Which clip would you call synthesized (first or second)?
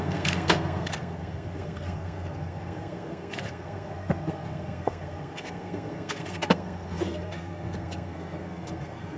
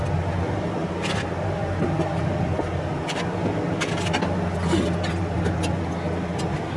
first